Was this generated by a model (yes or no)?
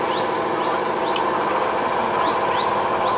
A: no